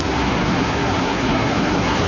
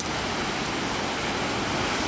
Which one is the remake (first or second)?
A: first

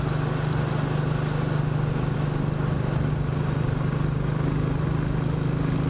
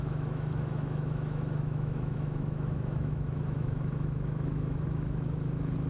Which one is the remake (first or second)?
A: second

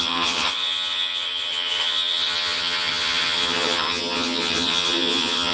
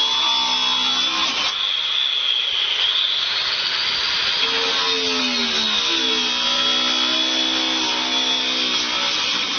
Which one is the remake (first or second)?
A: first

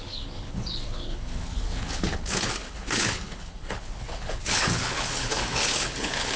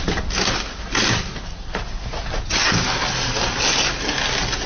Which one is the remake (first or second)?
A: first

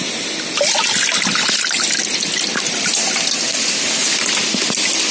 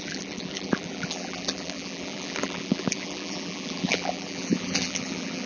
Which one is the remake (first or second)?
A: second